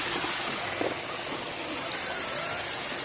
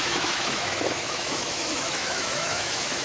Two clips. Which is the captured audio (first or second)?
first